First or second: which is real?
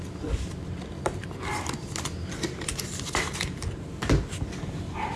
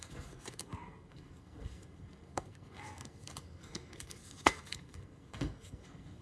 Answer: first